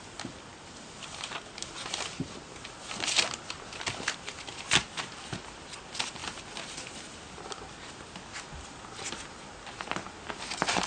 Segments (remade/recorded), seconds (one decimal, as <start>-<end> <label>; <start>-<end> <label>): 0.0-10.9 recorded